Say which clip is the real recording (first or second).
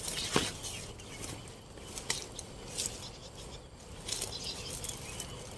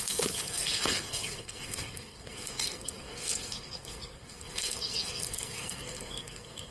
first